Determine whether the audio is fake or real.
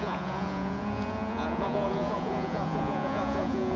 fake